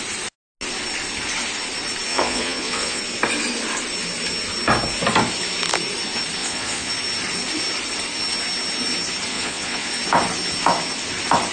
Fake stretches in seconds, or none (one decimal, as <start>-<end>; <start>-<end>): 2.1-3.0; 6.4-6.9; 9.3-9.9